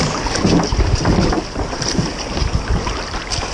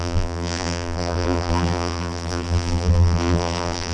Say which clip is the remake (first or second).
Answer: second